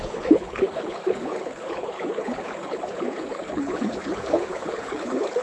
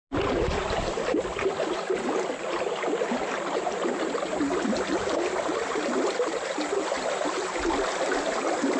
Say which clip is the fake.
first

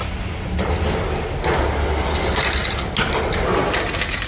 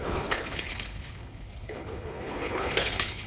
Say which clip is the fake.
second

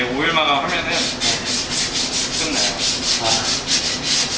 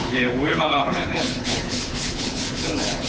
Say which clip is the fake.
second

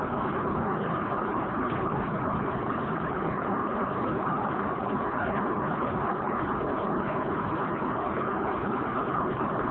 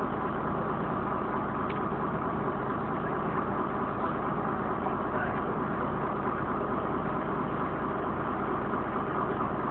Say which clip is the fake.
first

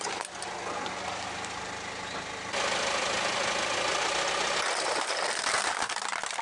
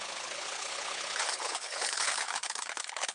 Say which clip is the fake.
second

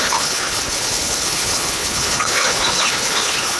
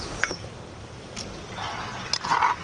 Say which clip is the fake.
first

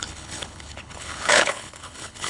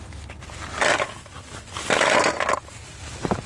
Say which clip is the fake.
first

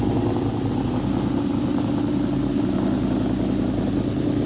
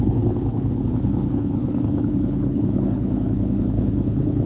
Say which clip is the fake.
second